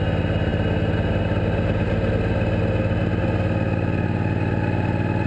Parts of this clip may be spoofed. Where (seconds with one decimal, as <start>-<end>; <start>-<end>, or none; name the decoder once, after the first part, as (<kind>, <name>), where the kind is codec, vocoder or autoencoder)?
none